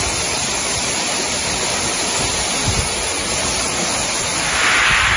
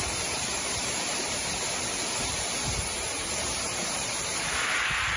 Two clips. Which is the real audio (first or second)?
first